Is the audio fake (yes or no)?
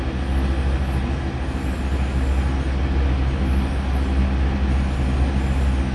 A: no